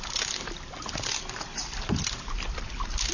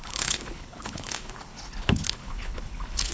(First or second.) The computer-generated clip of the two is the second